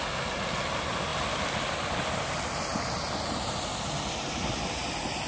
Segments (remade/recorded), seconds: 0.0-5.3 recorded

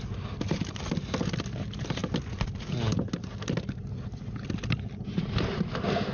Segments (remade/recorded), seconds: 0.0-6.1 recorded

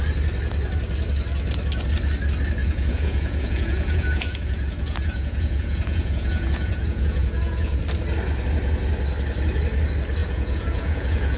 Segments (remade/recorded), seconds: 0.0-2.6 recorded; 2.6-7.8 remade; 7.8-10.2 recorded; 10.2-11.4 remade

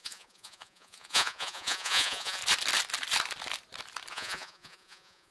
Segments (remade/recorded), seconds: 0.0-2.4 remade; 2.4-4.1 recorded; 4.1-5.3 remade

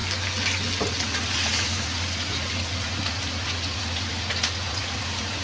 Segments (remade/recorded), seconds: 0.0-0.8 recorded; 0.8-5.4 remade

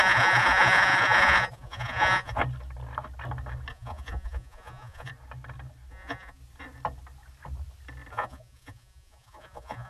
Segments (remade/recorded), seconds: 0.0-2.4 remade; 2.4-3.7 recorded; 3.7-5.1 remade; 5.1-5.9 recorded; 5.9-6.4 remade; 6.4-8.1 recorded; 8.1-9.9 remade